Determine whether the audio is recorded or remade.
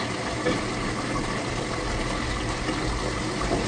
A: recorded